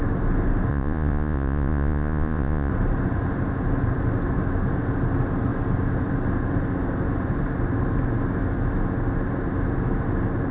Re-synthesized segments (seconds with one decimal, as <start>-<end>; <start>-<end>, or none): 0.7-2.7